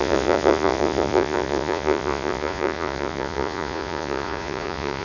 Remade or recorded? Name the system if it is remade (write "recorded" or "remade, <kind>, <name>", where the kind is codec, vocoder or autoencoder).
remade, vocoder, Vocos